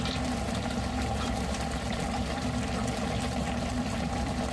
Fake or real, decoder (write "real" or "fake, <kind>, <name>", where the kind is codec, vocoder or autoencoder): fake, vocoder, BigVGAN v2